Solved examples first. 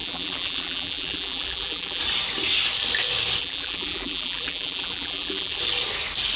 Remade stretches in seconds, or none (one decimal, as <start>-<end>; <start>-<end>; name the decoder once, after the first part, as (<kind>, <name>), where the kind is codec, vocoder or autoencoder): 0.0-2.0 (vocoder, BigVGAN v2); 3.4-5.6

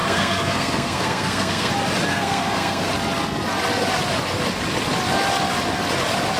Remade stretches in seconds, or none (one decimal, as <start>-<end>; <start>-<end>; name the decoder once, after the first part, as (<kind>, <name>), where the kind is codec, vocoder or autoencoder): 0.0-1.7 (codec, SNAC); 2.1-2.9

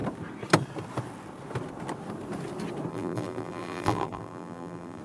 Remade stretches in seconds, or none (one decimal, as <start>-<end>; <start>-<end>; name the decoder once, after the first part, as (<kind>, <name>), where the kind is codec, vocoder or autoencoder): 2.9-5.0 (vocoder, BigVGAN v2)